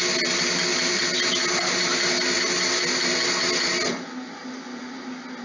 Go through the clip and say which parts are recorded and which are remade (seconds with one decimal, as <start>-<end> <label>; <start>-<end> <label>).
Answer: 0.0-5.4 recorded